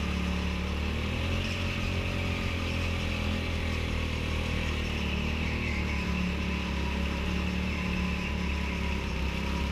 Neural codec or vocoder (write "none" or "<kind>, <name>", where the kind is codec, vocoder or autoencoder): none